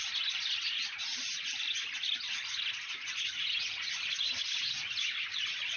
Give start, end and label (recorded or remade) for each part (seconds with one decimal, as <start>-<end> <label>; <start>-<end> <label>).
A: 0.0-5.8 recorded